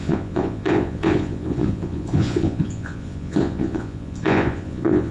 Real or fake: fake